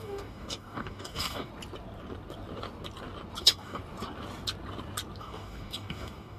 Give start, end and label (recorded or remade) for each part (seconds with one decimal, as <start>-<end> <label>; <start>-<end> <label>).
0.0-1.5 remade; 1.5-3.4 recorded; 3.4-3.8 remade; 3.8-5.2 recorded; 5.2-6.4 remade